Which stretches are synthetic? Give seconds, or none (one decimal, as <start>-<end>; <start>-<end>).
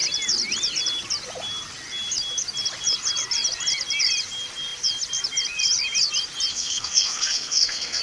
6.5-8.0